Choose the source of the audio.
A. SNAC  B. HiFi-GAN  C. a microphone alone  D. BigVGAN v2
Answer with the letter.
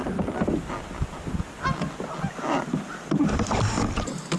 C